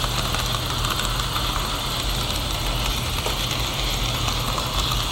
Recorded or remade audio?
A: recorded